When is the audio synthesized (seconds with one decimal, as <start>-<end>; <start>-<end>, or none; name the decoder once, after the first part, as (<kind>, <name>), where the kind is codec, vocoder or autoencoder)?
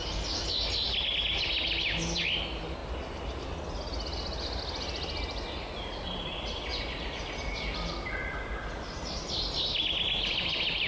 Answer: none